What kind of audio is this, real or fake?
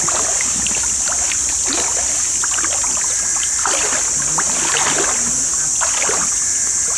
real